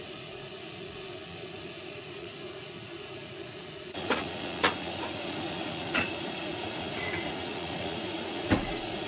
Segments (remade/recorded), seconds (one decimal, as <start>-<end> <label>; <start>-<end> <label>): 0.0-9.1 remade